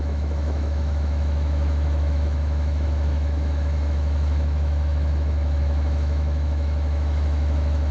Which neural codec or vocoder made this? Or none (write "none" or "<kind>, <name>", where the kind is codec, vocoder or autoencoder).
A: autoencoder, DAC-VAE